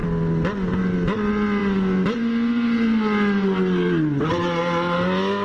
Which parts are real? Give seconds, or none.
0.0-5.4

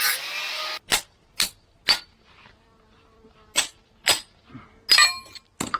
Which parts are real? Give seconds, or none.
0.0-5.8

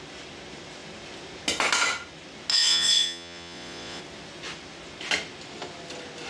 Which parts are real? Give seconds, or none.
0.0-2.5; 4.0-6.3

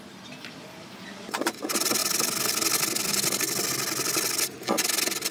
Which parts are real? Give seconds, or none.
0.0-5.3

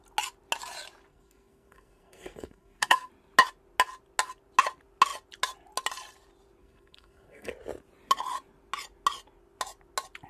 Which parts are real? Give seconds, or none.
0.0-1.1; 3.1-6.6; 7.5-10.3